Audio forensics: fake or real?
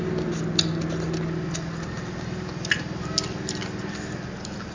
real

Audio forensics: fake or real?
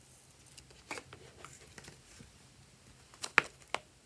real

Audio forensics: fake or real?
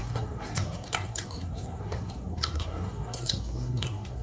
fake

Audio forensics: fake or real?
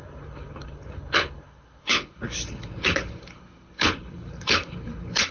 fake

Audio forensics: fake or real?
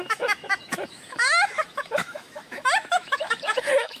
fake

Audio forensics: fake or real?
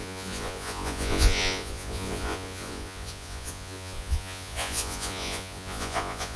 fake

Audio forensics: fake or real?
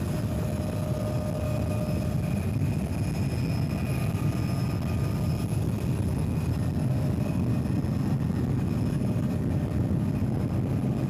real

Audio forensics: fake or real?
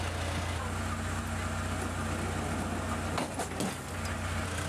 real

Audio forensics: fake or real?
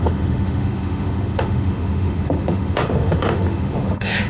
fake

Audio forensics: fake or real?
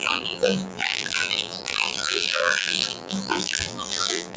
fake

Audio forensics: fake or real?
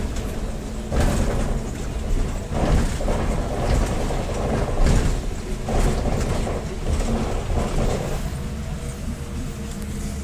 real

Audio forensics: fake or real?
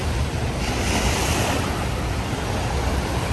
real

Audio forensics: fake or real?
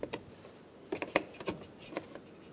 real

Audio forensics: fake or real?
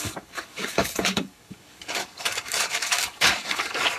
fake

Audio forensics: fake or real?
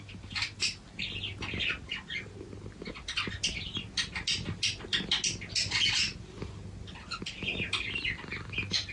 real